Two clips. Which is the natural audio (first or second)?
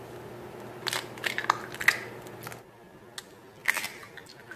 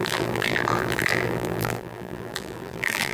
first